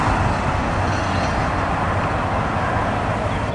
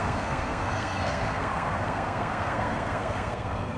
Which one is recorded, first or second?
first